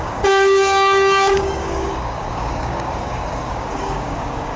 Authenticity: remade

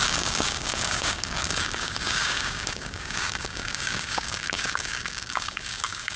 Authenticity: remade